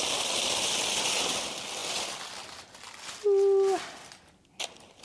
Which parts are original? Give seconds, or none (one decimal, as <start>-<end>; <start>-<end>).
0.0-5.0